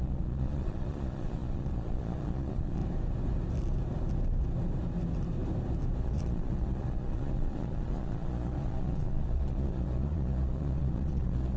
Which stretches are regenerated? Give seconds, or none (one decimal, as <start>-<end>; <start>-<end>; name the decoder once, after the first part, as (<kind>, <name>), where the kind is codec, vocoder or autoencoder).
0.0-2.8 (vocoder, Vocos); 6.0-11.6